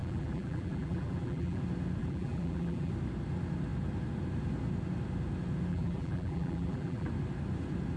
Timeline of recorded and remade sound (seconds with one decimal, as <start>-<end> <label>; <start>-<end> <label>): 0.0-1.6 remade; 1.6-2.0 recorded; 2.0-2.9 remade; 2.9-5.7 recorded; 5.7-7.1 remade; 7.1-8.0 recorded